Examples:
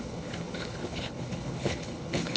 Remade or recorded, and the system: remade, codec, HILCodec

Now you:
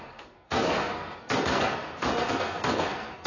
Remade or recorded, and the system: remade, codec, SNAC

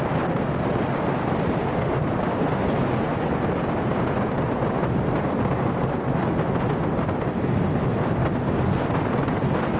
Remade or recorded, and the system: recorded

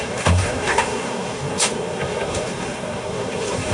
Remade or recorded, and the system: remade, codec, SNAC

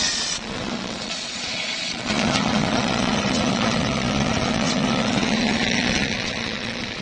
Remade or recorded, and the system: remade, vocoder, Vocos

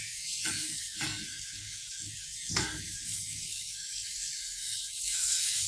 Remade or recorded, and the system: remade, codec, SNAC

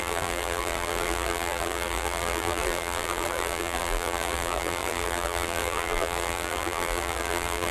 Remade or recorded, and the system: remade, vocoder, BigVGAN v2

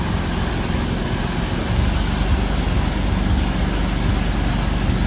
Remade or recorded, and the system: recorded